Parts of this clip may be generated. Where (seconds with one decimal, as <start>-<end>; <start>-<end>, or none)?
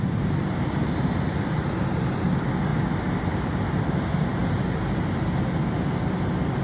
none